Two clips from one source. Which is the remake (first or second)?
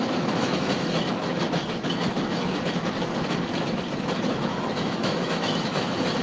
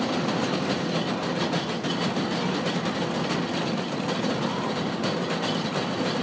first